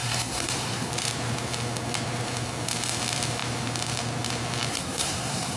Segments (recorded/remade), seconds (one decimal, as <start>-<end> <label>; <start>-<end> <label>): 0.0-0.9 remade; 0.9-4.7 recorded; 4.7-5.6 remade